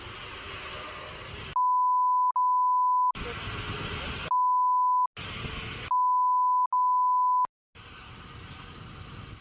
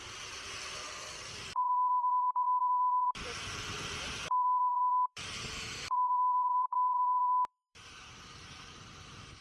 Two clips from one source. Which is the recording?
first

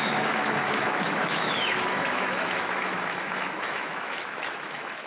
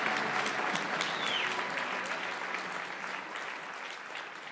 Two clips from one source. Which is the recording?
second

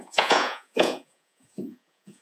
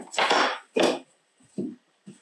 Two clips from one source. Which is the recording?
second